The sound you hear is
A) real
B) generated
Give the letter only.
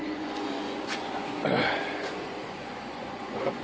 B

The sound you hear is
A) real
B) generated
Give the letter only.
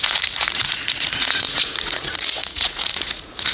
B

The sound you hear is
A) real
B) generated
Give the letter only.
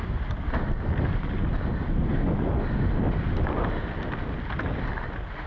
A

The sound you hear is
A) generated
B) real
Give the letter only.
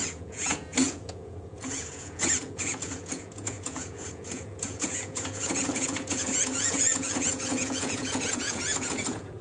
A